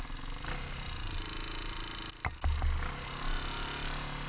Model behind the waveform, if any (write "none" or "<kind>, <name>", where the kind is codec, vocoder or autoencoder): none